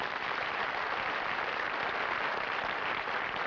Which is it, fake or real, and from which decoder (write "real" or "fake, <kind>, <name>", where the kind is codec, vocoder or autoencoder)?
real